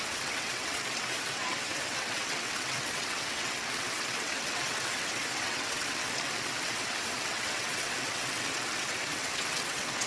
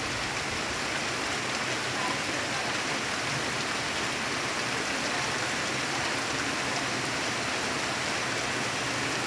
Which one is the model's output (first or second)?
first